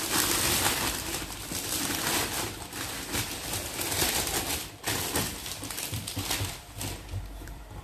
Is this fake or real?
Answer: fake